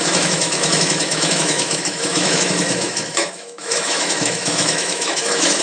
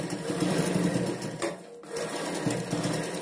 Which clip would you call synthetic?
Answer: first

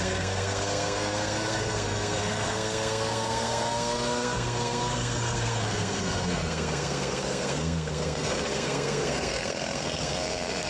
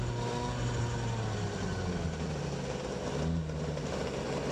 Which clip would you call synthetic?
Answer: first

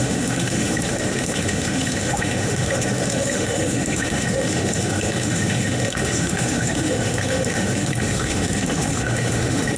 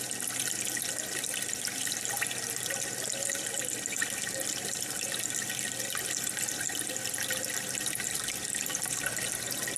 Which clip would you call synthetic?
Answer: first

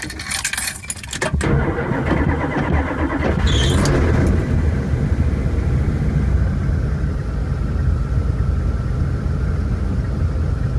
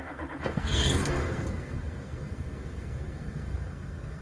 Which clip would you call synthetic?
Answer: second